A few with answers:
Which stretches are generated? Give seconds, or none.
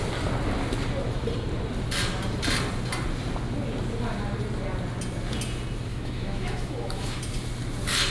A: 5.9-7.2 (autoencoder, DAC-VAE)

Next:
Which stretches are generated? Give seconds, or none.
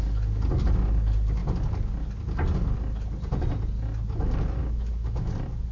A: 4.6-5.3 (autoencoder, DAC-VAE)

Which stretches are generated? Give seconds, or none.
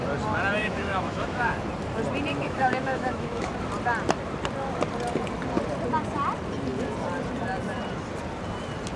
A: 0.6-1.5 (autoencoder, DAC-VAE); 2.3-3.5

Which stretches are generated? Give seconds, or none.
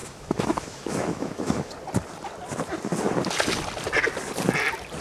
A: 0.0-1.7 (autoencoder, DAC-VAE)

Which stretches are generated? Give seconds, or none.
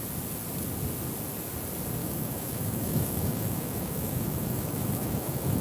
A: 2.0-5.6 (autoencoder, DAC-VAE)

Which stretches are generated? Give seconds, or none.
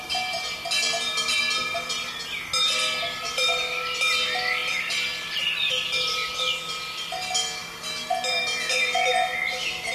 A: none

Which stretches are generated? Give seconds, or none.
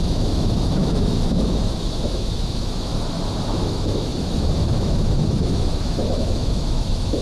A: 0.0-2.9 (autoencoder, DAC-VAE); 3.4-7.2